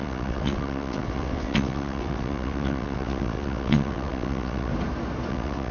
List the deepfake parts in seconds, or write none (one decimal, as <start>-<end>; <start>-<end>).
0.0-4.7; 5.3-5.7